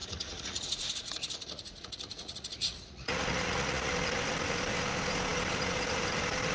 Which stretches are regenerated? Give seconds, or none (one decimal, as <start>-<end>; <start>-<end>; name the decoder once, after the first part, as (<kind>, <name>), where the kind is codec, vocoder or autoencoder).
0.0-3.9 (vocoder, Vocos)